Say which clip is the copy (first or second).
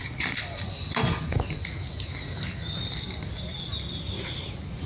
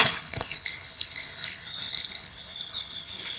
second